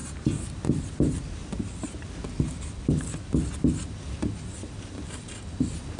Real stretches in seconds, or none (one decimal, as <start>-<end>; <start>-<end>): 0.9-6.0